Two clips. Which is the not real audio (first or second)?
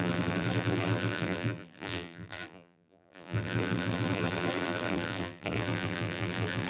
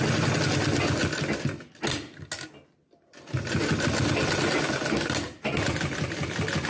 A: first